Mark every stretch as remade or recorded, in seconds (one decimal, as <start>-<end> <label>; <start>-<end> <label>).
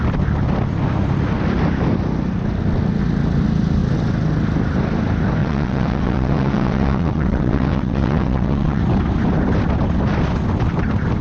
0.0-5.4 recorded; 5.4-8.8 remade; 8.8-11.2 recorded